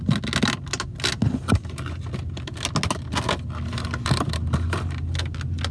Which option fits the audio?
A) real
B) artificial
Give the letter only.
A